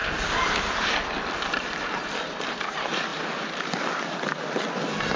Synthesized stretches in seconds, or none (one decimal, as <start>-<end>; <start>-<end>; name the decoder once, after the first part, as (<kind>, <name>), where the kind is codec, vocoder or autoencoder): none

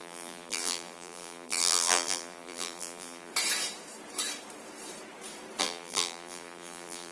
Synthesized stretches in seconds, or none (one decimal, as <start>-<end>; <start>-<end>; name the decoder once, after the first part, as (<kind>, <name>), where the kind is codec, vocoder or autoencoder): 0.0-3.3 (vocoder, BigVGAN v2); 5.6-7.1

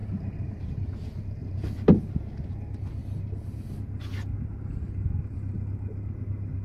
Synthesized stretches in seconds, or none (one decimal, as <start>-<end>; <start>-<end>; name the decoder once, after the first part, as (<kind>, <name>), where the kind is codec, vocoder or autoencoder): 0.0-0.7 (vocoder, BigVGAN v2); 1.4-2.0

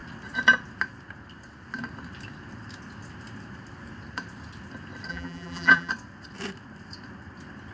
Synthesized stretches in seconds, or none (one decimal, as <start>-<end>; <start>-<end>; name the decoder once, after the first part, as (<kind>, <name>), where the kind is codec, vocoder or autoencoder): 5.1-5.9 (vocoder, BigVGAN v2)